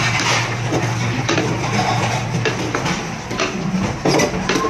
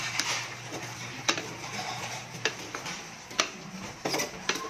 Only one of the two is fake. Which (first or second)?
second